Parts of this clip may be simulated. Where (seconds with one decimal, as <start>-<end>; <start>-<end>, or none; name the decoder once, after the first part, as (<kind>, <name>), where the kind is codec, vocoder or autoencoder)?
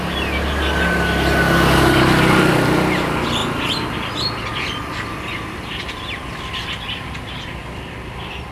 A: none